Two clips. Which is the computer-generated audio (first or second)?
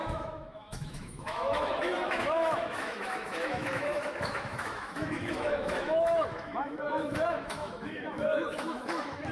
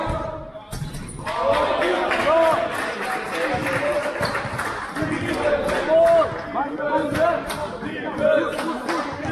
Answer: first